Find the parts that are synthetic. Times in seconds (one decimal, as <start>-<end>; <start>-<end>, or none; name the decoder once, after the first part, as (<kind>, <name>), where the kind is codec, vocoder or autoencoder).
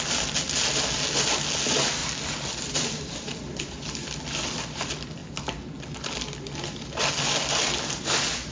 2.0-3.6 (vocoder, BigVGAN v2)